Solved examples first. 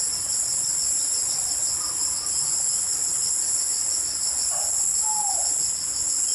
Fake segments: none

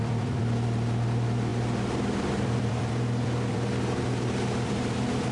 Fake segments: 0.0-5.3 (vocoder, BigVGAN v2)